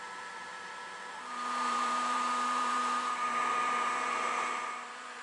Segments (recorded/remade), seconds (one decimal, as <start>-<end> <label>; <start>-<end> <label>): 0.0-5.2 remade